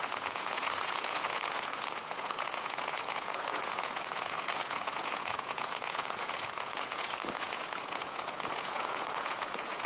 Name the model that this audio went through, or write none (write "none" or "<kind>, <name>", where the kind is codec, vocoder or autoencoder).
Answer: vocoder, Vocos